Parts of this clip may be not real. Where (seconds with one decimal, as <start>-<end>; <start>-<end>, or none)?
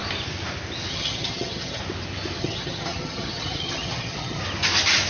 0.9-1.8; 2.4-4.4